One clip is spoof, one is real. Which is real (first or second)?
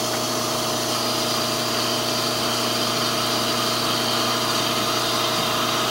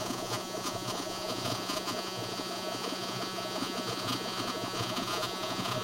first